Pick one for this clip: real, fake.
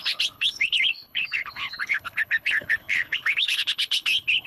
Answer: fake